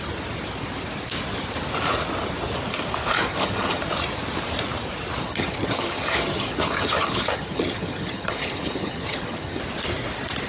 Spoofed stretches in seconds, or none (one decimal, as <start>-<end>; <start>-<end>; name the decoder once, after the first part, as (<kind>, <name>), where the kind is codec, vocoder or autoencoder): 3.3-3.8 (vocoder, HiFi-GAN); 5.2-9.6